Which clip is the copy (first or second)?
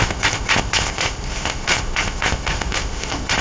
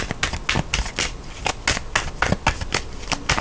first